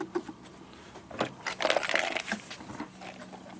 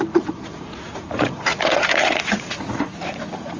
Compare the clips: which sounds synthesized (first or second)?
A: second